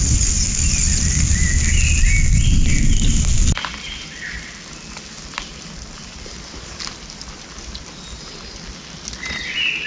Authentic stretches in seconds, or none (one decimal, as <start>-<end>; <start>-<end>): 0.0-9.9